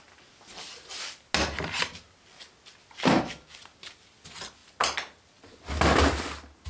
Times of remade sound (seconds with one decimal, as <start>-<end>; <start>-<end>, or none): none

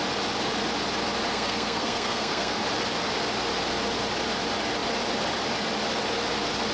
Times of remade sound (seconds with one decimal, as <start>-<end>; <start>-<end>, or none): 1.3-2.6

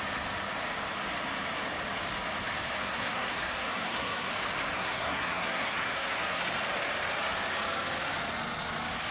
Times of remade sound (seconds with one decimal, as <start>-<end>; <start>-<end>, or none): 2.8-4.3; 4.7-6.4

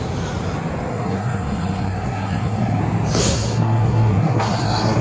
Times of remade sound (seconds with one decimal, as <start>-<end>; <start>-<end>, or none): 0.9-2.8; 3.2-5.0

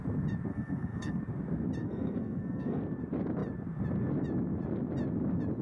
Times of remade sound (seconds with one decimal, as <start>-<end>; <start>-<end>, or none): 0.5-1.2; 1.8-2.8

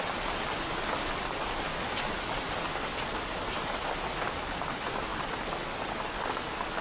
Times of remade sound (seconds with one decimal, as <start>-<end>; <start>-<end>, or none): none

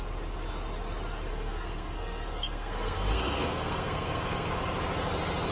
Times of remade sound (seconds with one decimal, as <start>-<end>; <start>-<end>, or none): 1.3-4.6